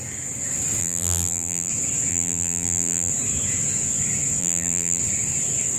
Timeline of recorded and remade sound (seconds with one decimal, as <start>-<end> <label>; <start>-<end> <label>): 0.0-0.8 recorded; 0.8-1.7 remade; 1.7-2.1 recorded; 2.1-3.1 remade; 3.1-4.4 recorded; 4.4-5.0 remade; 5.0-5.8 recorded